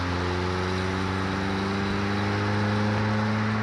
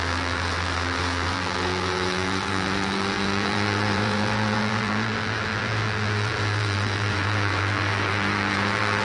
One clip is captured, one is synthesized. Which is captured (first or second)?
first